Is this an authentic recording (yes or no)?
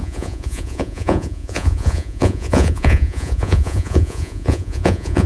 no